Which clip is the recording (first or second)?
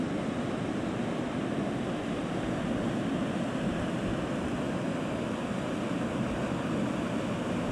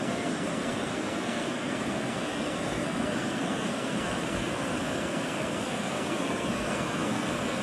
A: first